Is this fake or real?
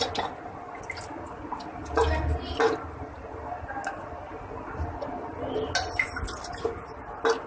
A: real